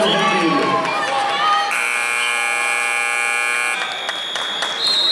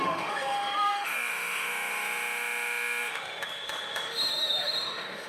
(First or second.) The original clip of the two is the first